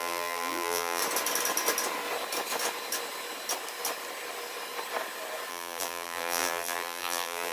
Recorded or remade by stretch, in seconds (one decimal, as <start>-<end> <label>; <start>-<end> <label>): 0.0-1.0 remade; 1.0-5.5 recorded; 5.5-7.5 remade